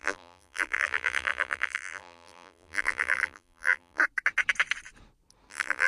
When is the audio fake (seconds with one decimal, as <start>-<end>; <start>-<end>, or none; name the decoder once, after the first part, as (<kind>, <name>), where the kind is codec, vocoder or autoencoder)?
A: 0.0-4.0 (vocoder, BigVGAN v2); 5.5-5.9